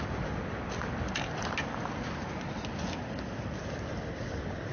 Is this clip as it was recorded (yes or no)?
yes